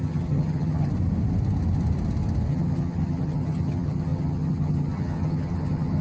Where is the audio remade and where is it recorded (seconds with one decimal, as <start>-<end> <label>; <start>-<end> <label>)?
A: 0.0-0.9 remade; 0.9-2.5 recorded; 2.5-6.0 remade